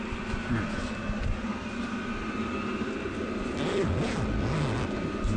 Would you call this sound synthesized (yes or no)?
no